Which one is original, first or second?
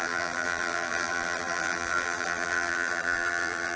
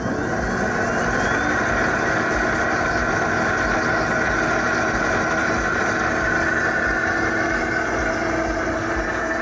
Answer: second